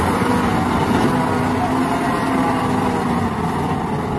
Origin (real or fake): real